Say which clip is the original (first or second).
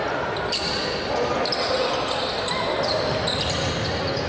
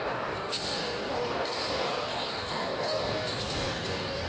first